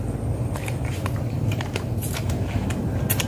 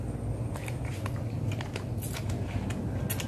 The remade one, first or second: first